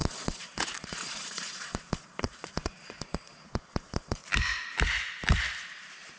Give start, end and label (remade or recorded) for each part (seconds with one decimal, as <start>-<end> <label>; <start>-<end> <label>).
0.0-4.2 remade; 4.2-6.2 recorded